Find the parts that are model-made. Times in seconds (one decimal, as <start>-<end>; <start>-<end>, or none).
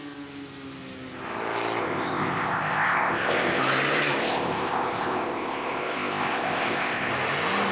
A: 1.8-3.6; 4.2-7.1